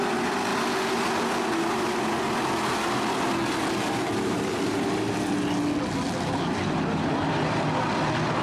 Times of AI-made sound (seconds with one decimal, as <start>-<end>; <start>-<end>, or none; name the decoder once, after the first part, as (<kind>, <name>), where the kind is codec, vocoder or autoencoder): none